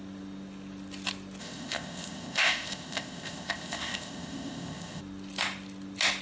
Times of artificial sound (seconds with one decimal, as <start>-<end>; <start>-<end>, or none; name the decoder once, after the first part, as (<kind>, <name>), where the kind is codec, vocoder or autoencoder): 1.4-5.0 (codec, ZipCodec)